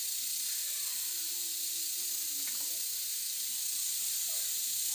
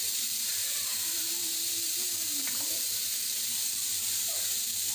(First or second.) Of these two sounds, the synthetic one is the second